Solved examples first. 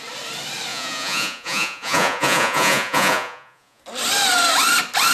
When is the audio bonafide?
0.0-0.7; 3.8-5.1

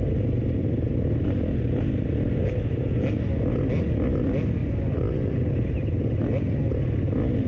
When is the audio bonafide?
0.0-7.5

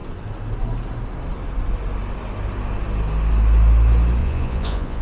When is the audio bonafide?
0.0-4.2

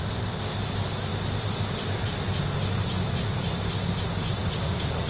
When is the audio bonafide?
0.0-5.1